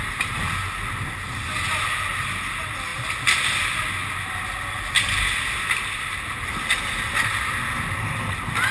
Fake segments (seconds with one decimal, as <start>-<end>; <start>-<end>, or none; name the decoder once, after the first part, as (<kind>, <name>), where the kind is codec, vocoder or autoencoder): none